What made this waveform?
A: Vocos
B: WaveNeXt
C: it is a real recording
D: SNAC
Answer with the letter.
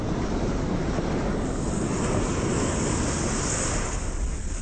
C